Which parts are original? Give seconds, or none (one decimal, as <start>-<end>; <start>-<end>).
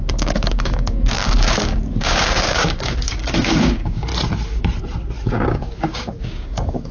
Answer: 4.1-5.3